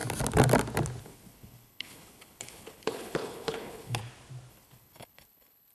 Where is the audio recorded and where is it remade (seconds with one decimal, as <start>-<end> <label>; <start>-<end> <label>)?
0.0-1.0 recorded; 1.0-4.0 remade; 4.0-4.5 recorded; 4.5-5.7 remade